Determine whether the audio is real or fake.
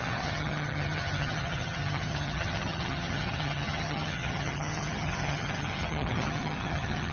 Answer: fake